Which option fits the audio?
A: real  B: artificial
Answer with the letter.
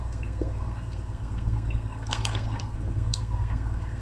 B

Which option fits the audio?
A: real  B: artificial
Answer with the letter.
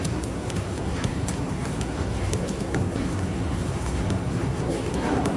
B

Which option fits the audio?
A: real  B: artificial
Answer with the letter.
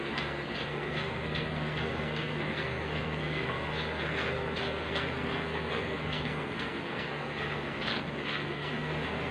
B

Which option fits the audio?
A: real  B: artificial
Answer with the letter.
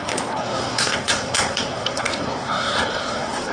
B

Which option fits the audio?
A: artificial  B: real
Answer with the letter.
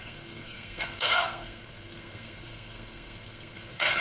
A